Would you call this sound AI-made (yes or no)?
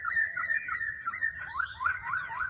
yes